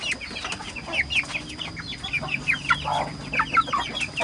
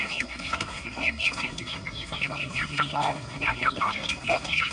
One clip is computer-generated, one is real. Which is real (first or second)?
first